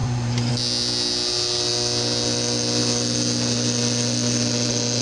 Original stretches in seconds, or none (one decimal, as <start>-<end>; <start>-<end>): 0.5-5.0